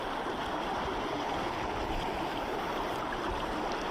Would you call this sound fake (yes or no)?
no